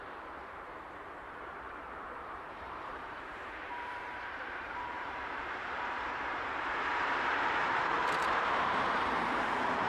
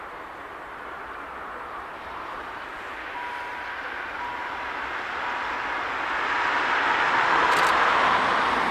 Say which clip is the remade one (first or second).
first